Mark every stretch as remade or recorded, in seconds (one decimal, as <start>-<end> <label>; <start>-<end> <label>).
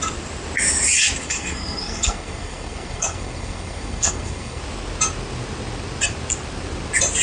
0.0-1.2 recorded; 1.2-4.6 remade; 4.6-7.2 recorded